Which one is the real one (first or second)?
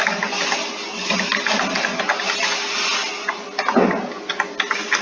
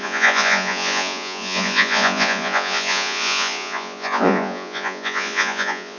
first